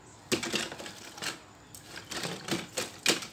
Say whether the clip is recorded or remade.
recorded